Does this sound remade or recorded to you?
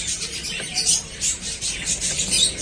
remade